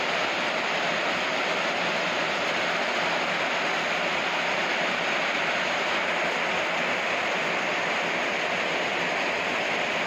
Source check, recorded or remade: recorded